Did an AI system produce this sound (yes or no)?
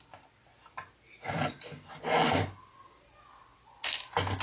no